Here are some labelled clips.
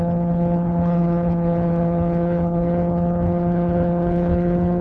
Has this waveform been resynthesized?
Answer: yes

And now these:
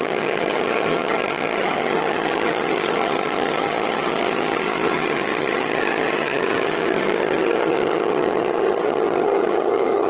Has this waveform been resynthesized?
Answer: yes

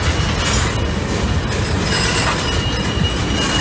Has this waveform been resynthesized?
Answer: no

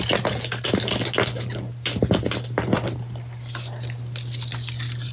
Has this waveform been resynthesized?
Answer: no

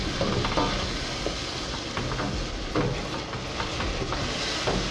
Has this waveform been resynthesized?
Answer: no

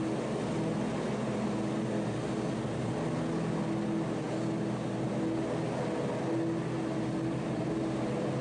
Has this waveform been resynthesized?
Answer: no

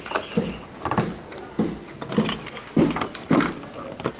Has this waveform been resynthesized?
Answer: no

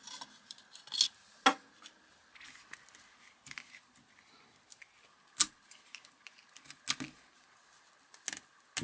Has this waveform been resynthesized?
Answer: no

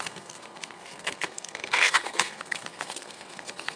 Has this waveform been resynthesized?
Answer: yes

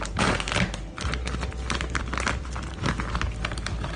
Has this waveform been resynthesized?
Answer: no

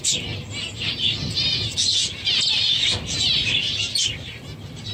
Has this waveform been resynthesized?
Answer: no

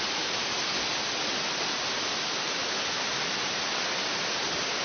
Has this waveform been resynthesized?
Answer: no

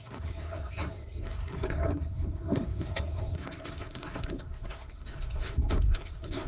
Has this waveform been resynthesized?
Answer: yes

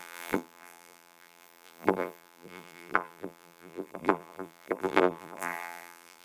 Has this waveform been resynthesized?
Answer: yes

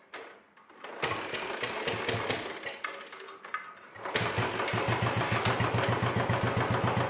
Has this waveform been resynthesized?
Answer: no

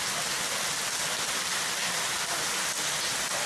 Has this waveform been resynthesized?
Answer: no